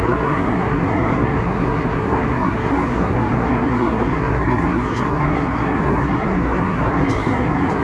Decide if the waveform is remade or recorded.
remade